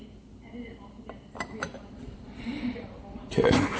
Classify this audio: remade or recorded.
recorded